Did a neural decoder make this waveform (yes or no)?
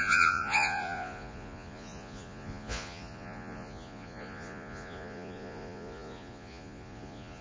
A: yes